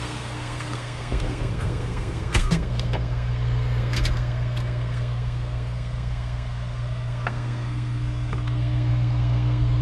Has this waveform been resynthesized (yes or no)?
yes